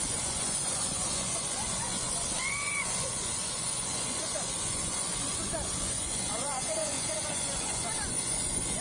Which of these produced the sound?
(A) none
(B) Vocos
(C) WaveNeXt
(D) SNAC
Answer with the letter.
B